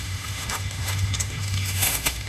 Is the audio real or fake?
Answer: fake